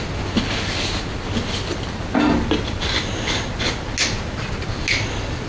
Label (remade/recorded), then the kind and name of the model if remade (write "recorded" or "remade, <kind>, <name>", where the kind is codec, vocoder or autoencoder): recorded